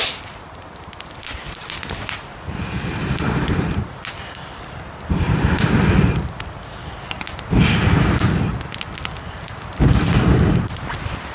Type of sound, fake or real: real